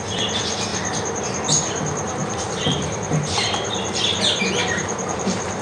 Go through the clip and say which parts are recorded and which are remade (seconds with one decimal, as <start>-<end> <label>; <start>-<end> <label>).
0.0-2.2 recorded; 2.2-4.0 remade; 4.0-4.6 recorded; 4.6-5.6 remade